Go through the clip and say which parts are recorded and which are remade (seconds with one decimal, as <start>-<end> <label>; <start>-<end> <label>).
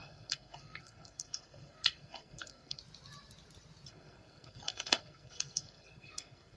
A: 0.0-2.8 remade; 2.8-3.9 recorded; 3.9-6.6 remade